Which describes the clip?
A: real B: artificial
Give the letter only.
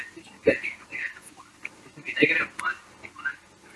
A